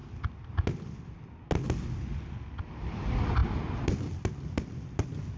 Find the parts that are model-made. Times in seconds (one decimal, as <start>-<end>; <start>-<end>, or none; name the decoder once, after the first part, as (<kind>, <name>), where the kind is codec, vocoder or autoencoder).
0.0-0.5 (vocoder, BigVGAN v2); 3.4-5.4